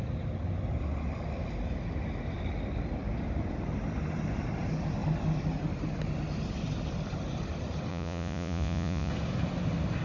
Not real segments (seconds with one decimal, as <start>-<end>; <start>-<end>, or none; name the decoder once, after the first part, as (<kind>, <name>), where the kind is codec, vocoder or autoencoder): 7.9-9.1 (vocoder, Vocos)